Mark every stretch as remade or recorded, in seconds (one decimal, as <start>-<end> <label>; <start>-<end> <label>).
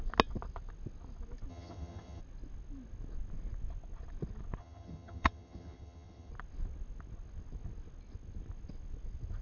0.0-1.5 recorded; 1.5-2.2 remade; 2.2-4.6 recorded; 4.6-6.3 remade; 6.3-9.4 recorded